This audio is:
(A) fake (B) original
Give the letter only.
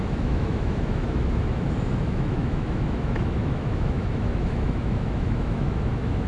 A